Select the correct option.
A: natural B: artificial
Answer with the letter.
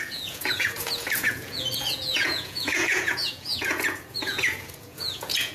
B